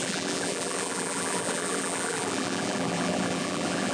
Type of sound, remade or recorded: remade